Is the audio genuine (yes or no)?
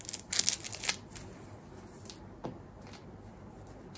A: yes